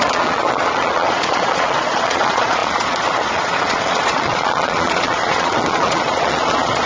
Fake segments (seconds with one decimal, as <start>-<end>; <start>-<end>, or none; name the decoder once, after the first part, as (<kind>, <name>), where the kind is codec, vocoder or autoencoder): 0.0-6.9 (vocoder, Vocos)